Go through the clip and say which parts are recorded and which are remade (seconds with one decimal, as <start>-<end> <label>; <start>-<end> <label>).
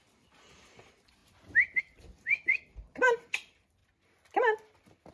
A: 0.0-1.2 remade; 1.2-1.8 recorded; 1.8-3.8 remade; 3.8-5.1 recorded